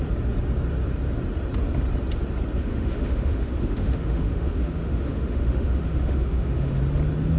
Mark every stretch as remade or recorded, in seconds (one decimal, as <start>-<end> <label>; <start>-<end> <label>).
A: 0.0-2.6 recorded; 2.6-6.8 remade; 6.8-7.4 recorded